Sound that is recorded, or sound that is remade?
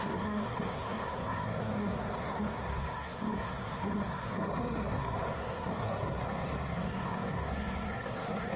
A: remade